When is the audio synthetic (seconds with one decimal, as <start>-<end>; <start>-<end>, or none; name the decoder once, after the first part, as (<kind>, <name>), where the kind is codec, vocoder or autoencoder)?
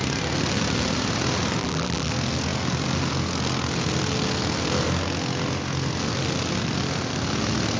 1.6-2.1 (vocoder, BigVGAN v2)